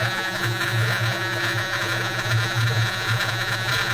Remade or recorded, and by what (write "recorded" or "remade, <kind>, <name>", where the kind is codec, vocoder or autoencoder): remade, vocoder, Vocos